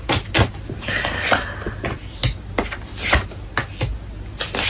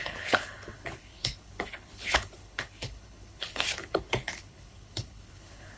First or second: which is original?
first